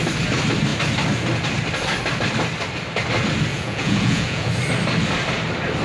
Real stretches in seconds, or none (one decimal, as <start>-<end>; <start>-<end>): 0.0-3.5; 4.5-5.8

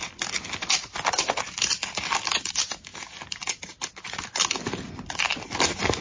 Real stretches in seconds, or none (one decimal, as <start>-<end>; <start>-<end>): 0.0-6.0